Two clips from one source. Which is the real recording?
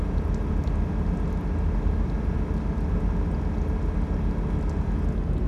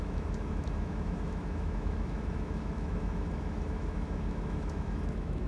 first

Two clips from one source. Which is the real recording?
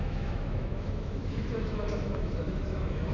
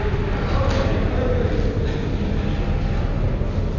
second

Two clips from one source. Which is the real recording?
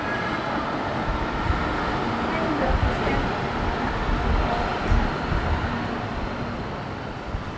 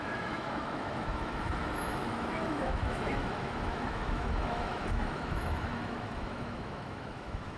first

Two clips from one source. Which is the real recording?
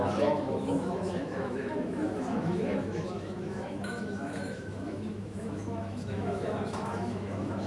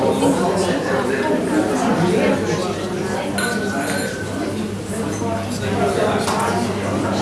second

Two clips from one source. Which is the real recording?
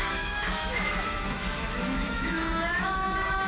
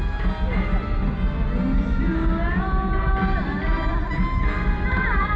second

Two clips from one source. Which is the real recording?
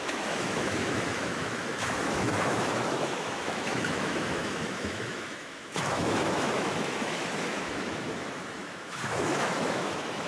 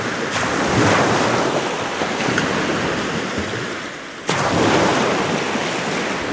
second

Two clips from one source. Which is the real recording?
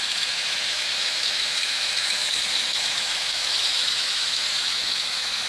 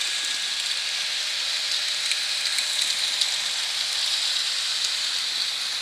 second